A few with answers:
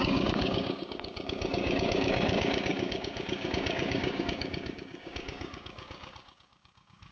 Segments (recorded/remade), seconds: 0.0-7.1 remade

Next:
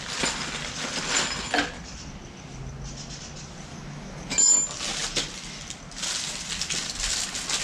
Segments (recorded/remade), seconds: 0.0-3.7 recorded; 3.7-4.5 remade; 4.5-7.6 recorded